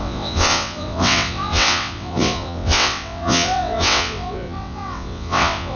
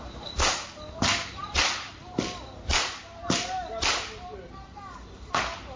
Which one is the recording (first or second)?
second